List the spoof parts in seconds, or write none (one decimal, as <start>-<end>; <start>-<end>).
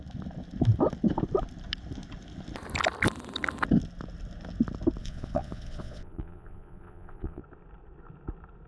5.0-7.4